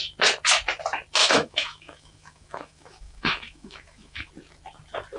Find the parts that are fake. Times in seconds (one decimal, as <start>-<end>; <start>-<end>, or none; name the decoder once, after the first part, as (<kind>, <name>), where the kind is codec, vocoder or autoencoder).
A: 1.2-4.3 (autoencoder, DAC-VAE)

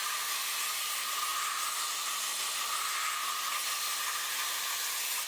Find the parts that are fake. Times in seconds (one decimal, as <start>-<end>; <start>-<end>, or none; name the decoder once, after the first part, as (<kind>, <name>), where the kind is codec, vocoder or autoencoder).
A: none

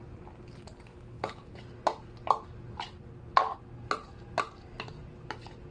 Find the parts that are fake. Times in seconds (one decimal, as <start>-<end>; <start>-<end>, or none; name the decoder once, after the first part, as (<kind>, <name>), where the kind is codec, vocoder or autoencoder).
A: 0.9-1.6 (autoencoder, DAC-VAE)

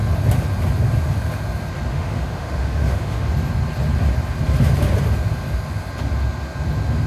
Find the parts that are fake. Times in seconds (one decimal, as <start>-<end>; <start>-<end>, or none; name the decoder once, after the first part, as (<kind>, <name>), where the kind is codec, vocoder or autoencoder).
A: 1.9-3.3 (autoencoder, DAC-VAE)

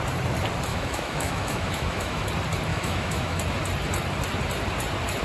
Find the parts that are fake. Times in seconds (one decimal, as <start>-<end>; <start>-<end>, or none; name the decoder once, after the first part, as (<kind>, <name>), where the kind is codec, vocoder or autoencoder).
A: 0.7-2.3 (autoencoder, DAC-VAE); 2.7-3.4

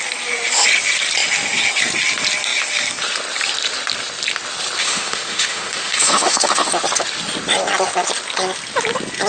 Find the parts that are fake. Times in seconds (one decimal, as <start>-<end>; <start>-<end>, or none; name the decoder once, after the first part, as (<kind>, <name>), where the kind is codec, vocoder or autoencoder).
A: 4.8-6.7 (autoencoder, DAC-VAE)